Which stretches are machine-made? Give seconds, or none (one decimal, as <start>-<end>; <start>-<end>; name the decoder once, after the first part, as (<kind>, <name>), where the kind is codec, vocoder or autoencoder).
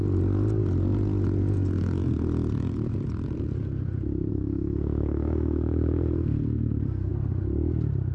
4.3-7.1 (codec, SNAC)